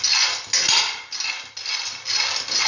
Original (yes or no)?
yes